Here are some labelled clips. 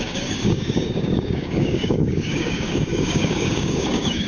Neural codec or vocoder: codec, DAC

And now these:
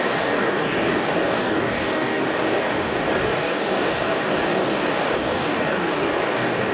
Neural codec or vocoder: codec, DAC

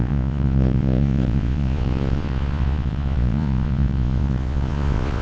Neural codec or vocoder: vocoder, Vocos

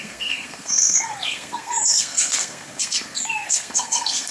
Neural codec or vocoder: codec, SNAC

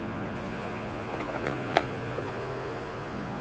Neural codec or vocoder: vocoder, Vocos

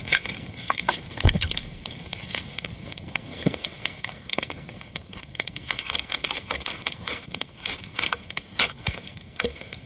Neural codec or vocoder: codec, SNAC